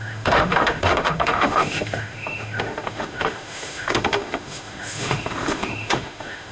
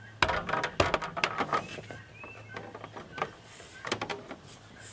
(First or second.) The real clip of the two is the second